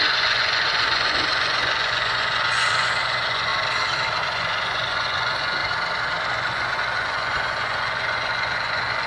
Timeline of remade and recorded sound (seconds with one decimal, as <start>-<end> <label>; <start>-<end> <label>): 0.0-3.5 remade; 3.5-4.2 recorded; 4.2-5.6 remade; 5.6-6.3 recorded; 6.3-9.1 remade